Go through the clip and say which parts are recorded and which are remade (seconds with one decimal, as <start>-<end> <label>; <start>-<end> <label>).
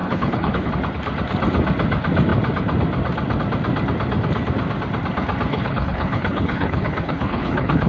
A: 0.0-0.7 remade; 0.7-5.5 recorded; 5.5-7.9 remade